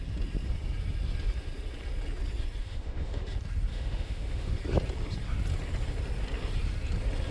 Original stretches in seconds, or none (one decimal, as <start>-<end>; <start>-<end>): 0.0-2.6; 3.2-3.7; 4.6-7.3